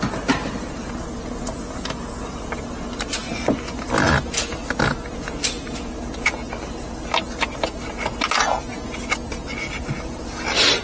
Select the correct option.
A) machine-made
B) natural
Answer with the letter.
B